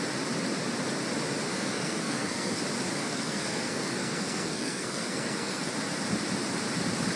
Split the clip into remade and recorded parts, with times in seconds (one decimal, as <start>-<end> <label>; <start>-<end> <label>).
0.0-1.5 recorded; 1.5-2.6 remade; 2.6-3.0 recorded; 3.0-5.7 remade; 5.7-7.2 recorded